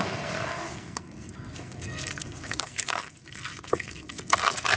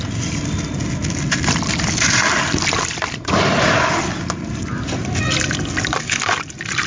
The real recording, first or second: second